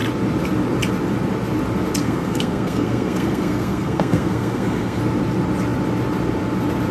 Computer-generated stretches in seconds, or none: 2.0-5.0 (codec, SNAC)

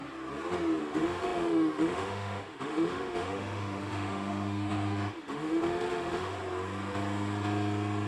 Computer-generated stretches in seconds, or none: 0.8-6.4 (autoencoder, DAC-VAE)

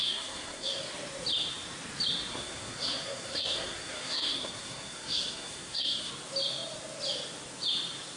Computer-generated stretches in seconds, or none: 0.0-0.8 (codec, SNAC); 2.3-6.1

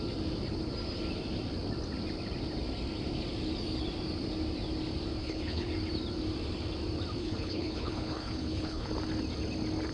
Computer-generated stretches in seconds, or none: 5.2-5.7 (codec, HILCodec); 7.2-8.9

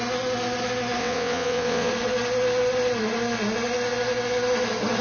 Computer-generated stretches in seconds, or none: 1.0-1.9 (vocoder, WaveNeXt)